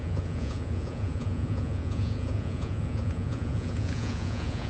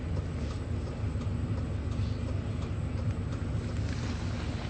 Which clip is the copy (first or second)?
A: first